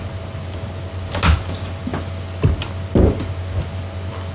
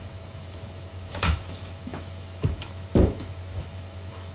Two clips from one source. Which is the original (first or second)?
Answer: first